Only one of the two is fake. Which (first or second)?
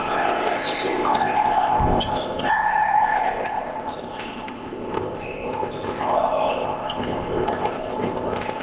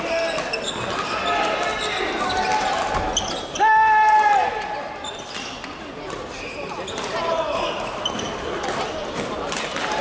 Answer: first